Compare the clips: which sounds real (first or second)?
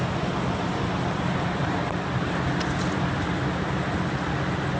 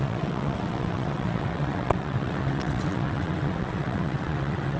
first